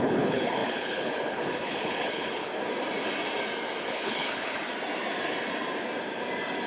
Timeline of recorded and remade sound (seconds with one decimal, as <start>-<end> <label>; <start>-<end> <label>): 0.0-2.5 remade; 2.5-3.8 recorded; 3.8-4.6 remade; 4.6-6.7 recorded